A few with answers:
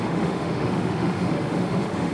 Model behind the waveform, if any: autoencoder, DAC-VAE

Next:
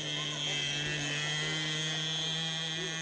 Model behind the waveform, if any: none